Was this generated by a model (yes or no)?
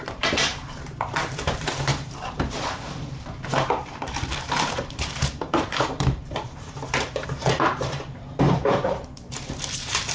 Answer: yes